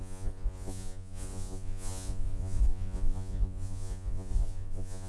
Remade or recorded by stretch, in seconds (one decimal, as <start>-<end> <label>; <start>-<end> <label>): 0.0-5.1 remade